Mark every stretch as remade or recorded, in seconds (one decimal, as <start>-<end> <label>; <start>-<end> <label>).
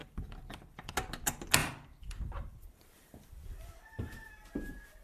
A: 0.0-0.9 remade; 0.9-1.6 recorded; 1.6-4.3 remade; 4.3-5.0 recorded